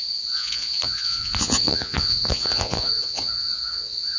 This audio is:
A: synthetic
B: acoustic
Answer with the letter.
A